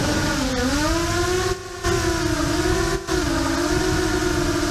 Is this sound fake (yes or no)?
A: no